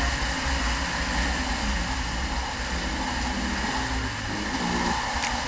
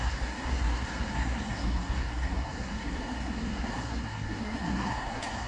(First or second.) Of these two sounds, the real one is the first